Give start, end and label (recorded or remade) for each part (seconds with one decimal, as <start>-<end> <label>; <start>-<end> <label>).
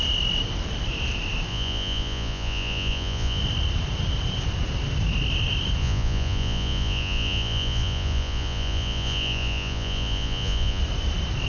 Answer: 0.0-1.5 recorded; 1.5-3.4 remade; 3.4-5.8 recorded; 5.8-10.8 remade; 10.8-11.5 recorded